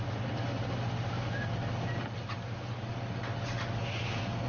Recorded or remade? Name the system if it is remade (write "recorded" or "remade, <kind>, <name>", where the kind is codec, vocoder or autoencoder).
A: recorded